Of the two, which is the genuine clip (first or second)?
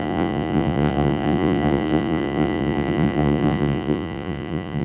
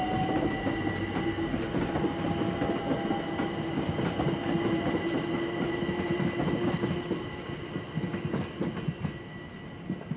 second